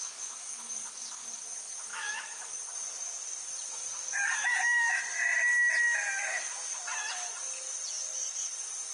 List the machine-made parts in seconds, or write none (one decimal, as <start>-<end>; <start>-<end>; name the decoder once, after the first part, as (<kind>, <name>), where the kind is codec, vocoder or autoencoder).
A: 0.0-1.4 (codec, DAC); 1.9-2.5; 3.7-5.0